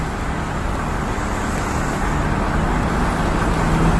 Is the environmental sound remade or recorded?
recorded